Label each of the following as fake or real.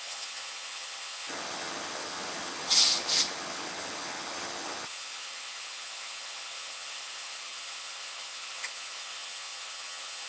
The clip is fake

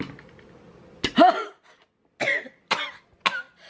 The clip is real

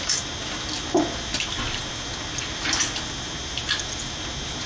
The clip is real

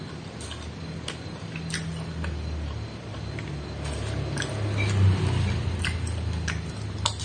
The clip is real